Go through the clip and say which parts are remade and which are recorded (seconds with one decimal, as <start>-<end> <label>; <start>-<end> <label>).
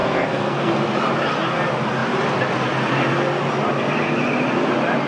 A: 0.0-0.7 remade; 0.7-5.1 recorded